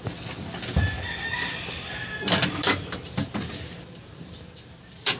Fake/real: fake